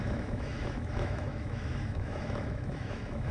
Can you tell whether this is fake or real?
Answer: fake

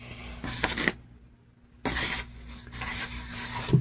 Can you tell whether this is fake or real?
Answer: real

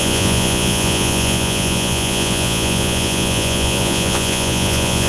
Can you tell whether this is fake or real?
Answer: fake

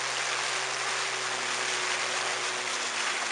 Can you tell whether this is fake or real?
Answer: real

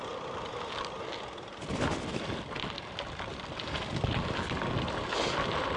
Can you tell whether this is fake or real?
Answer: real